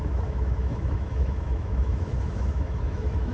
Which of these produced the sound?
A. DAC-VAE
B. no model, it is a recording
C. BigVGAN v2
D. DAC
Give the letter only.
A